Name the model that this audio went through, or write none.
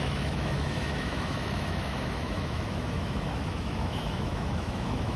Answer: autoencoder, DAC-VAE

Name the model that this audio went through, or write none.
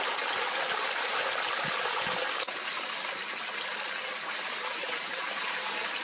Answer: none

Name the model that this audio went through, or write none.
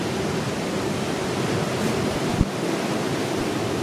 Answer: none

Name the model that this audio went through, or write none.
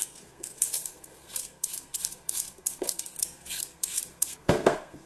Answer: codec, SNAC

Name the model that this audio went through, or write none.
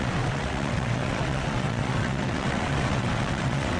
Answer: vocoder, WaveNeXt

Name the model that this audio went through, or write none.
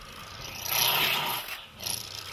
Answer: none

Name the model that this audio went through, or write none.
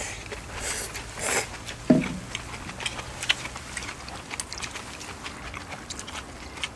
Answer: none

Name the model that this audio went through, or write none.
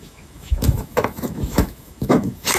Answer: autoencoder, DAC-VAE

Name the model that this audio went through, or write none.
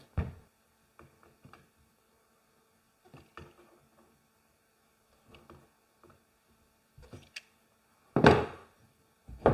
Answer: none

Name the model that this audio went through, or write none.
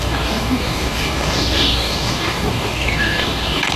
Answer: codec, DAC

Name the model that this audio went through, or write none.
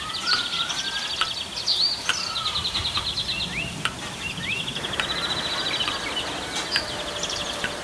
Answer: none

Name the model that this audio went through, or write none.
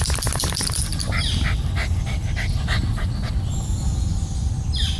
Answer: none